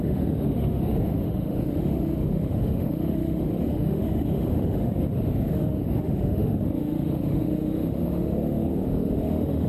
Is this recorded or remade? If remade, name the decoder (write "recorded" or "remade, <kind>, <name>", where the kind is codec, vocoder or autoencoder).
remade, autoencoder, DAC-VAE